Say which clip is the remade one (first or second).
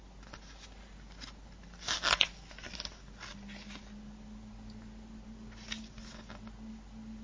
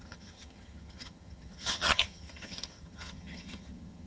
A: second